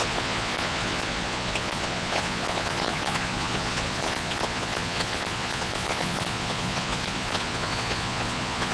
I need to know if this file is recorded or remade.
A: remade